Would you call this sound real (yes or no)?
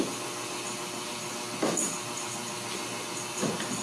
yes